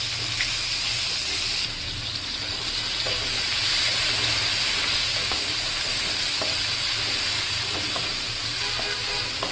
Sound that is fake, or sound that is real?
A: real